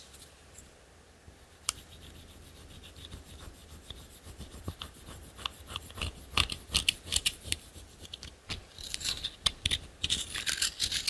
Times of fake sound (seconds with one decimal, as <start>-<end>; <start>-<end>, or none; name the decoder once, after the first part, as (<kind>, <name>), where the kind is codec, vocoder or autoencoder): 7.1-7.8 (vocoder, BigVGAN v2); 8.6-9.1

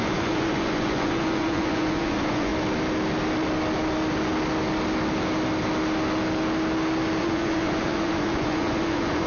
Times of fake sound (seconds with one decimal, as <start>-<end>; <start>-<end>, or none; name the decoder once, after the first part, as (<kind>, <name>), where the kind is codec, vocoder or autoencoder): 0.0-2.5 (vocoder, Vocos); 7.2-9.3